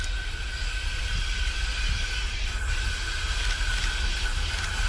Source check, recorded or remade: recorded